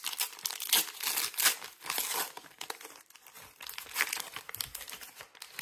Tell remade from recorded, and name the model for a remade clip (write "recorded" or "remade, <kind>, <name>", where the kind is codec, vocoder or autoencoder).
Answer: recorded